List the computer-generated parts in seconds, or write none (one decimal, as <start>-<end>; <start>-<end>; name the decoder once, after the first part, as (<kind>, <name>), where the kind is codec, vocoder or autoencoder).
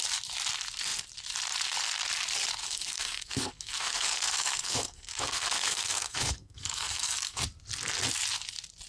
2.6-7.4 (codec, SNAC)